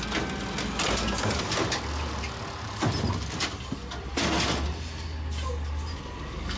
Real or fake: real